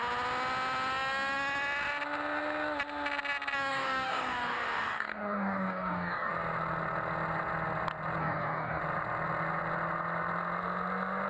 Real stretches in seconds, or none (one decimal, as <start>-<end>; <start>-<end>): 0.0-3.7; 6.3-8.2; 8.8-11.3